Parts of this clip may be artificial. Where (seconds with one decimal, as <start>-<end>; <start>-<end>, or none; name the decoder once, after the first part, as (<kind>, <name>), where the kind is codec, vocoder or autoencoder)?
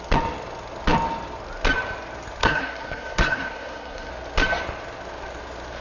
2.4-4.1 (codec, SNAC)